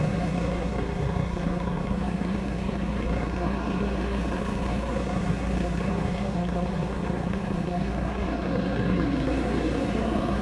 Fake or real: fake